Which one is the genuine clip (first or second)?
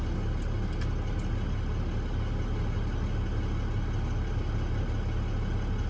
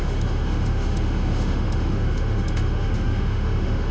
first